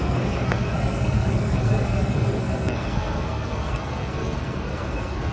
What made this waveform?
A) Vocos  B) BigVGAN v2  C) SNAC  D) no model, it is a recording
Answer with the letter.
C